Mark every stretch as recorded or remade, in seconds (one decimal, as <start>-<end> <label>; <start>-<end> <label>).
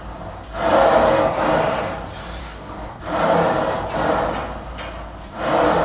0.0-2.4 recorded; 2.4-3.0 remade; 3.0-5.8 recorded